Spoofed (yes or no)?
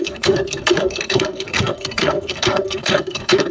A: yes